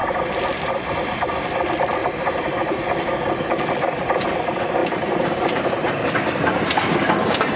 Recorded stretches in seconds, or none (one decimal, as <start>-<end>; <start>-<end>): 0.0-4.8; 6.1-7.6